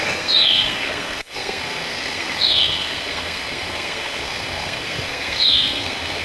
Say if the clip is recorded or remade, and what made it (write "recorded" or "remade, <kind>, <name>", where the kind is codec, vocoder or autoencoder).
remade, codec, SNAC